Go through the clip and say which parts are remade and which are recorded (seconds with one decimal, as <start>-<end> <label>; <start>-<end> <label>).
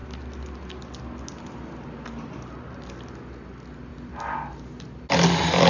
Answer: 0.0-5.7 recorded